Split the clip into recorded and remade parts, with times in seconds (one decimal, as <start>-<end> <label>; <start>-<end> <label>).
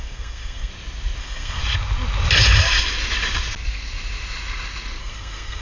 0.0-0.7 remade; 0.7-1.2 recorded; 1.2-1.6 remade; 1.6-5.0 recorded; 5.0-5.6 remade